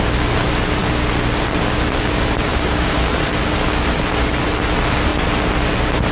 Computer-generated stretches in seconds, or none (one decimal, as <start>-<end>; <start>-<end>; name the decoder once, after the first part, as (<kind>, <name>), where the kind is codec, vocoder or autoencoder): 2.5-3.1 (codec, DAC)